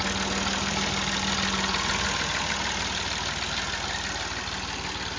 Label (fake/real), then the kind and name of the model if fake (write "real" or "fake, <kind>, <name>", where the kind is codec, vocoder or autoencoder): real